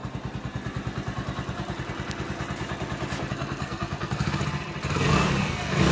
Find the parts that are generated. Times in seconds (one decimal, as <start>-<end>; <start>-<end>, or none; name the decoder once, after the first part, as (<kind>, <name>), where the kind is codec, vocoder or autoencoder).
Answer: 3.3-4.4 (codec, SNAC); 4.9-5.9